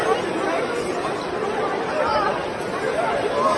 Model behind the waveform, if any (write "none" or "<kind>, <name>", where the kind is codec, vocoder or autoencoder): none